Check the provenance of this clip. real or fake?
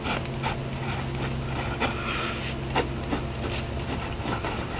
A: real